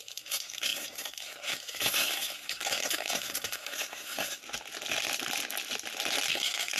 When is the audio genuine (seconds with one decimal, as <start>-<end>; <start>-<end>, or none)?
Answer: 4.4-6.3

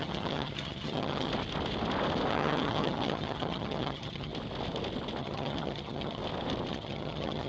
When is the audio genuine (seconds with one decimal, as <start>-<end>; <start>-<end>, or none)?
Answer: 1.3-2.3; 4.3-5.2; 6.2-6.7

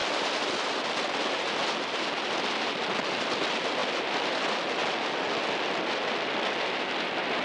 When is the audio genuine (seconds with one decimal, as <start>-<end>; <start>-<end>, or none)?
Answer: 0.0-7.4

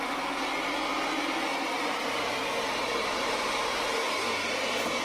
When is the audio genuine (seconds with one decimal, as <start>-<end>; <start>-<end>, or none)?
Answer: 0.0-0.9; 3.9-5.0

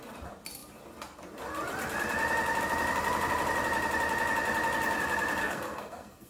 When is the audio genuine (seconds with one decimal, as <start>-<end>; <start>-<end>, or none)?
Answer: 0.0-5.4

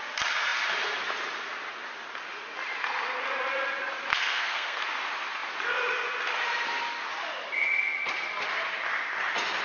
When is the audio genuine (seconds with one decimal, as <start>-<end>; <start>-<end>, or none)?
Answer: 0.0-4.1; 4.8-9.6